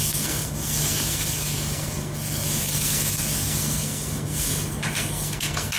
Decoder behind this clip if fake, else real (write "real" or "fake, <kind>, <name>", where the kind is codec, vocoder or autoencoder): fake, codec, SNAC